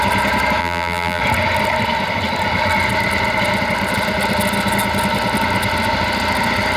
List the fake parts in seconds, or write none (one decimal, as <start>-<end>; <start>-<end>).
0.6-1.2